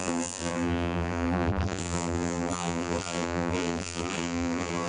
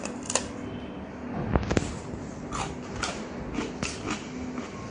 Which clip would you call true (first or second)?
second